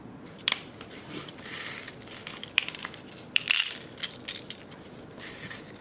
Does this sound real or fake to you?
fake